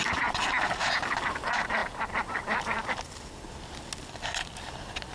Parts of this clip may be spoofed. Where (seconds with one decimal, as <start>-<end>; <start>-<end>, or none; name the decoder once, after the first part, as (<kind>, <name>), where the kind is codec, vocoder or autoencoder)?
none